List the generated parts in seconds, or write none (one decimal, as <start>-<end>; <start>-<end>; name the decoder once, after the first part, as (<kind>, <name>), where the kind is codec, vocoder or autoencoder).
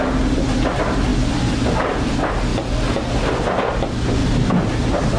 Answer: none